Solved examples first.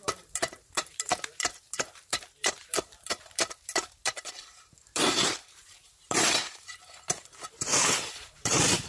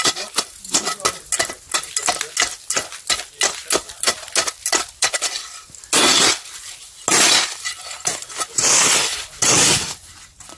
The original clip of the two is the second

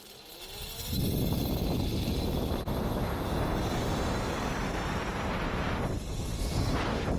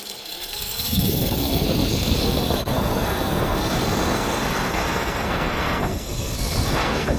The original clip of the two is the first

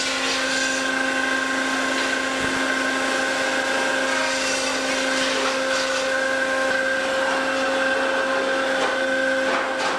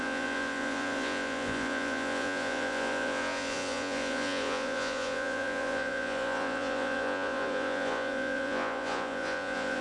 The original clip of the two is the first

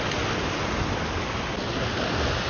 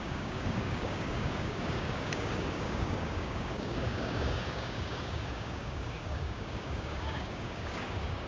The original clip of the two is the first